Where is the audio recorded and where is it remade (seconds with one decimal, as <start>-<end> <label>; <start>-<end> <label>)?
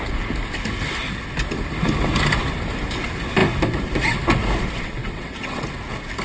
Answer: 0.0-5.0 recorded; 5.0-5.6 remade; 5.6-6.2 recorded